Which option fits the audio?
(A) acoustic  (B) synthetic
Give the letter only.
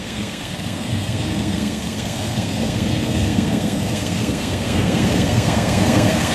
B